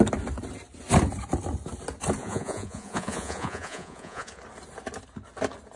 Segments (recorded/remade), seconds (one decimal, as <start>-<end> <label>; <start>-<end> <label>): 0.0-2.2 recorded; 2.2-4.4 remade; 4.4-5.8 recorded